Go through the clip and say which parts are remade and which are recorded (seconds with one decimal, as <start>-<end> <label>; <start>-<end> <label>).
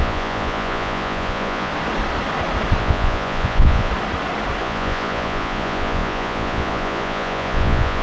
0.0-1.7 remade; 1.7-2.8 recorded; 2.8-3.9 remade; 3.9-4.6 recorded; 4.6-8.0 remade